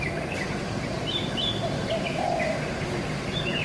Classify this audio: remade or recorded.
recorded